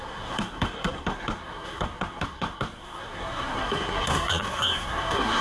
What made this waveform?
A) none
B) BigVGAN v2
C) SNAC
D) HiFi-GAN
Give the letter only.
C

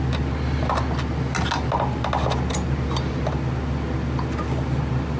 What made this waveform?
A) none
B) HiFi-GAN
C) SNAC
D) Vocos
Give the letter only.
A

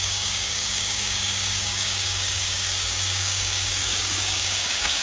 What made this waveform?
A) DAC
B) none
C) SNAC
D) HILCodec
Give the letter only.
A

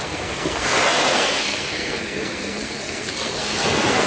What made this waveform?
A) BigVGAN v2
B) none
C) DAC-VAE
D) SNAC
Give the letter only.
D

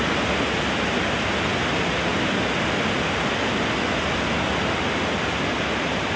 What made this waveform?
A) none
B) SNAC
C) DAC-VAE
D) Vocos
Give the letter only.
A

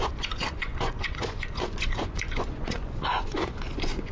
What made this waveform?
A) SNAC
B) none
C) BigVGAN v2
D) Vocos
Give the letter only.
D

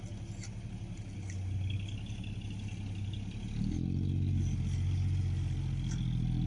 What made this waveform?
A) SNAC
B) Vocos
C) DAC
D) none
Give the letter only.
D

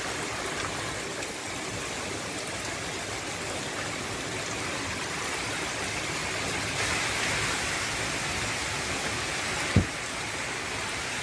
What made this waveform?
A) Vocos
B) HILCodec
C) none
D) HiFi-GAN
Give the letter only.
C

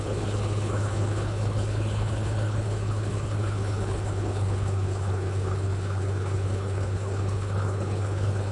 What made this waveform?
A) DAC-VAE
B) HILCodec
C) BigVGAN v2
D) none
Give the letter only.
B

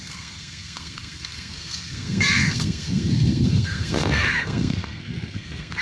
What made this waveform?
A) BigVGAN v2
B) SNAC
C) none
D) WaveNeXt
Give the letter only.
B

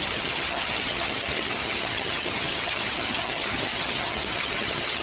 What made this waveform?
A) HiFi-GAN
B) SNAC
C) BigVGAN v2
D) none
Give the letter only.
A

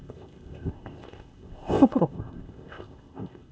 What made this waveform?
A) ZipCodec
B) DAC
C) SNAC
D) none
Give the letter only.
A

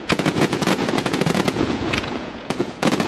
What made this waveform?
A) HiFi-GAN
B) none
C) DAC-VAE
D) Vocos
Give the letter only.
D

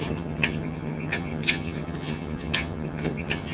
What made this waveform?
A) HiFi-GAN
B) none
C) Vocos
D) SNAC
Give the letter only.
A